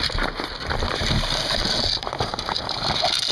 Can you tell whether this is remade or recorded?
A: recorded